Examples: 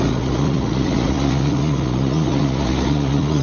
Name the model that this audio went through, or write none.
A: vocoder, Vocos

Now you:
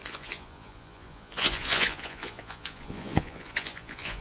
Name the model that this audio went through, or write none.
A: vocoder, Vocos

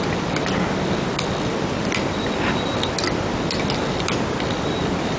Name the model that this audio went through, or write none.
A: none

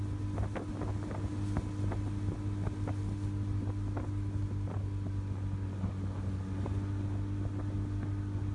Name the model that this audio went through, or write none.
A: none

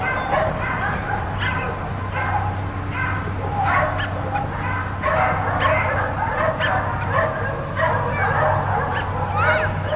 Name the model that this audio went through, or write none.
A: none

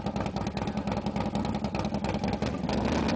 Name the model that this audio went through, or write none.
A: none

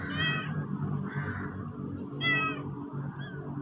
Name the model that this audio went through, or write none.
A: none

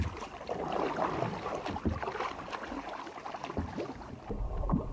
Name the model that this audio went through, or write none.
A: none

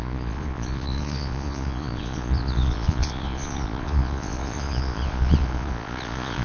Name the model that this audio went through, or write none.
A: vocoder, Vocos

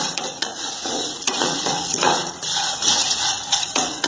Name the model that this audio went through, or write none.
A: vocoder, Vocos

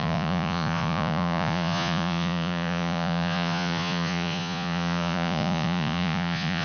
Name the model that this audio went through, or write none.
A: vocoder, Vocos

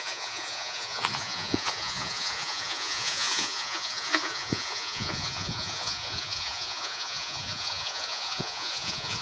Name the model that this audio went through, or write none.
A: vocoder, Vocos